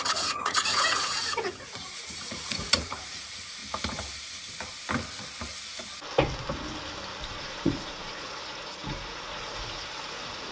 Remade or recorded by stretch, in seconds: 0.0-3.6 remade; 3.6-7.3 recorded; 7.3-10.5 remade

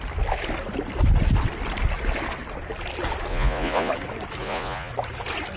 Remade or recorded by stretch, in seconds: 0.0-3.3 recorded; 3.3-3.9 remade; 3.9-4.4 recorded; 4.4-4.9 remade; 4.9-5.6 recorded

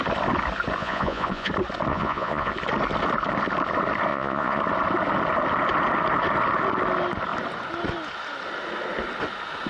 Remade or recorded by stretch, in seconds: 0.0-0.8 recorded; 0.8-1.5 remade; 1.5-1.9 recorded; 1.9-2.5 remade; 2.5-4.1 recorded; 4.1-4.6 remade; 4.6-9.7 recorded